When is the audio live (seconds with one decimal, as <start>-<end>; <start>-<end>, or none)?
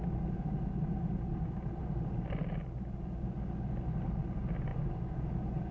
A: 0.0-5.7